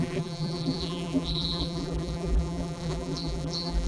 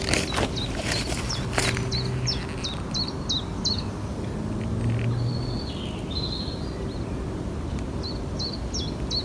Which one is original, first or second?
second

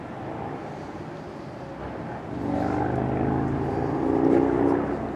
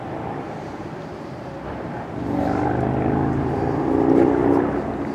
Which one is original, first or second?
first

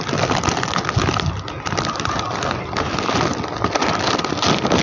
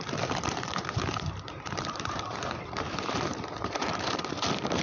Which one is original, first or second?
first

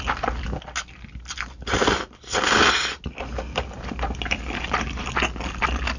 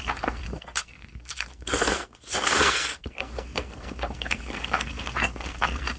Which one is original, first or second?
first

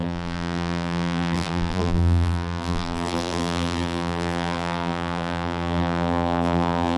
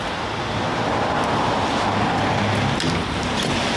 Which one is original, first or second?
second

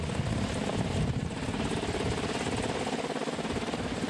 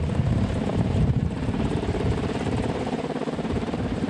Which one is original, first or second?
first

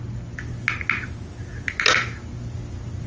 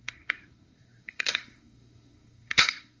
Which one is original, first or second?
first